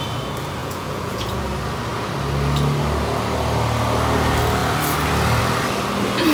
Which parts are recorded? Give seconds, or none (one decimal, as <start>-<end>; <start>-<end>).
0.0-0.6; 1.4-6.3